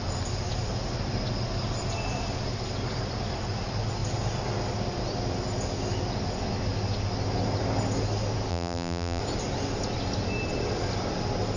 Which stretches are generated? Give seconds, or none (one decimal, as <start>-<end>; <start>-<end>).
8.5-9.2